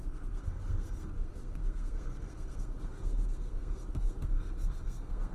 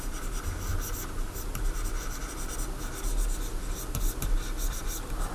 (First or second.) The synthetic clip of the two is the first